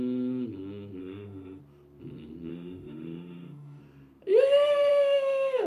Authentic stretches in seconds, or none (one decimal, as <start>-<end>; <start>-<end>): 0.0-1.0; 1.6-2.5; 3.8-4.9

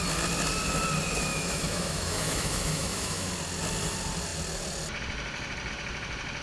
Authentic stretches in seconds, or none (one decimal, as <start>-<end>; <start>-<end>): 0.0-1.3; 3.3-6.4

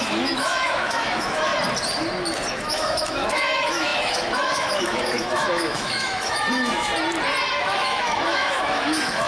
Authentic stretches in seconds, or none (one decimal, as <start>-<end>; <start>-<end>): 1.5-2.5; 6.9-7.6

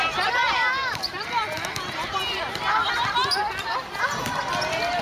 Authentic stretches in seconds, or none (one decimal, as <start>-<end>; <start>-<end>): 0.0-5.0